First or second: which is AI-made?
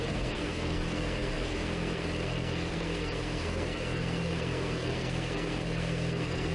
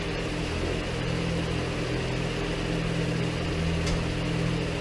first